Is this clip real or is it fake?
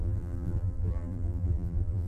fake